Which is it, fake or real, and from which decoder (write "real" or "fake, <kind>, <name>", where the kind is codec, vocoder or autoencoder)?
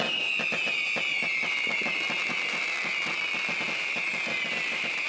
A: real